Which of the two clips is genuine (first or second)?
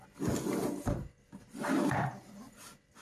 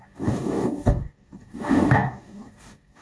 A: first